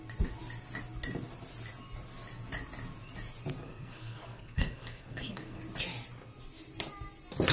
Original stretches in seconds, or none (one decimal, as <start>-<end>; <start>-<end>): 0.0-3.6; 5.6-7.5